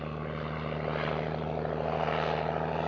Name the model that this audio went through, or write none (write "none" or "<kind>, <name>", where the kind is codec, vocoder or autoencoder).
none